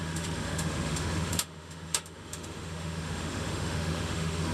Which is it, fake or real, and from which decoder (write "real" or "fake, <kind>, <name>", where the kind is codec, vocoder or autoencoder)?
fake, autoencoder, DAC-VAE